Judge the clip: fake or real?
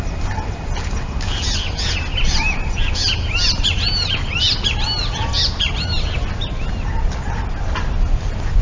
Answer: real